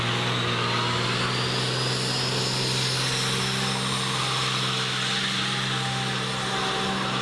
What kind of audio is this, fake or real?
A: real